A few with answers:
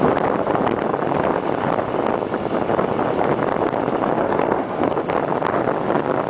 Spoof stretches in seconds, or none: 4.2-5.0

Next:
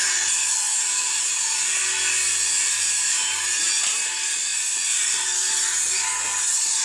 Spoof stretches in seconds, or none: 0.8-1.8; 2.6-3.5; 4.5-5.5